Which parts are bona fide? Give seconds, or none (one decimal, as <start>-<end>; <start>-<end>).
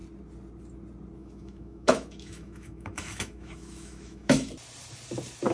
0.0-1.2; 4.5-5.5